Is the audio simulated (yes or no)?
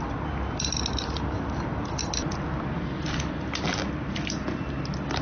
no